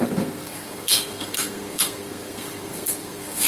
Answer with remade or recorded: remade